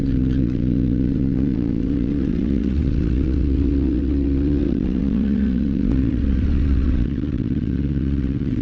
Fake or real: fake